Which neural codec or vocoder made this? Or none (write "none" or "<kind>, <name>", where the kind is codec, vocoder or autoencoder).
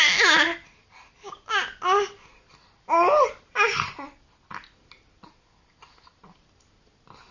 none